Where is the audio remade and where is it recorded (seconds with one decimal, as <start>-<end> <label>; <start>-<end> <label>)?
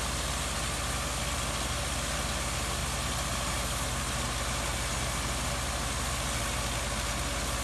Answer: 0.0-7.6 recorded